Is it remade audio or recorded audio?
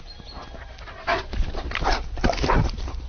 recorded